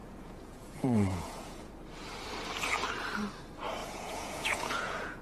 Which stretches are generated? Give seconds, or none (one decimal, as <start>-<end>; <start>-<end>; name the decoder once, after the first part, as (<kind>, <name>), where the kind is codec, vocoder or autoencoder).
0.0-1.7 (vocoder, Vocos); 3.8-5.2